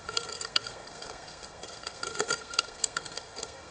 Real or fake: fake